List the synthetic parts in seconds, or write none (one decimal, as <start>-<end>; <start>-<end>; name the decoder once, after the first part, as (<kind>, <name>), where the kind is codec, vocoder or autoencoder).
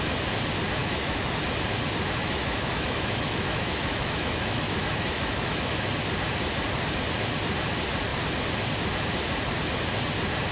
0.8-1.4 (autoencoder, DAC-VAE); 2.2-5.9